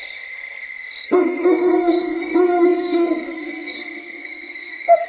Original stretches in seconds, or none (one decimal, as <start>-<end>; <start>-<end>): none